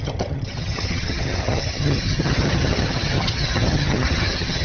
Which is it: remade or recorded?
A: remade